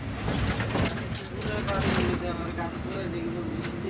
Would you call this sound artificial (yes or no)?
no